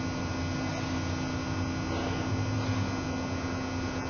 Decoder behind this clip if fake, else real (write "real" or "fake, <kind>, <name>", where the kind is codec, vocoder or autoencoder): real